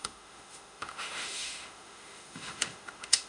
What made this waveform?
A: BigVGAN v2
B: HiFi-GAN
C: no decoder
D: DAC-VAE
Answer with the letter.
D